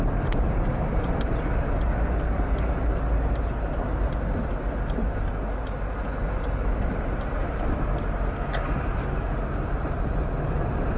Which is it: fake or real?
real